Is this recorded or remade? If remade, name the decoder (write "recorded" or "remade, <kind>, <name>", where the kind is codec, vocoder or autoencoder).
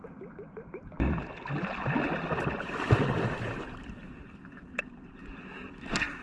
recorded